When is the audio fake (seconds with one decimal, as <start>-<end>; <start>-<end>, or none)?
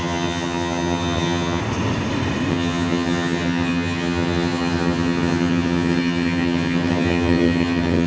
0.0-1.6; 2.5-8.1